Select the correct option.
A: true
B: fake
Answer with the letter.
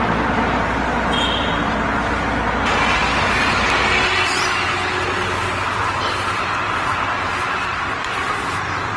A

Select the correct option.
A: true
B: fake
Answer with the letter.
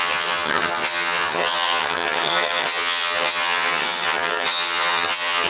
B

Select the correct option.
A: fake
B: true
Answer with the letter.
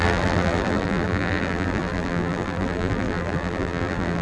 A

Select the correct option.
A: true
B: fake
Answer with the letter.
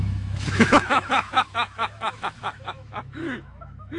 B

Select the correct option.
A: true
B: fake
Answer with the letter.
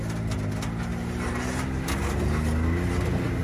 A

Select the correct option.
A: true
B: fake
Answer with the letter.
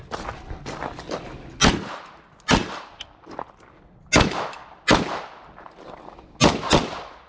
A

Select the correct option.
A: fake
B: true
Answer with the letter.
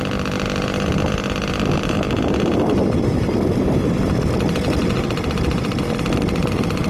B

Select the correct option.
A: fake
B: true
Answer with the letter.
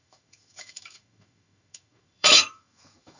A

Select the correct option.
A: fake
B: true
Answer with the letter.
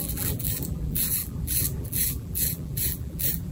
A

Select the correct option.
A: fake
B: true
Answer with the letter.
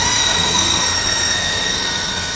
A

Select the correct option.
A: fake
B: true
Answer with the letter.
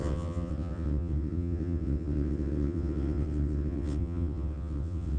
A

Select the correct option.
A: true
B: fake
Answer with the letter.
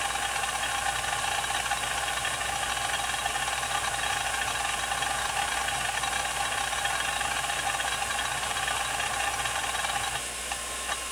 A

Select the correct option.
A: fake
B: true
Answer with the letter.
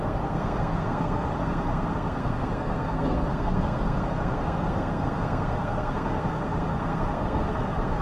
A